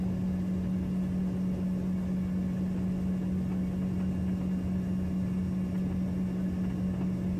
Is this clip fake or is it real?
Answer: real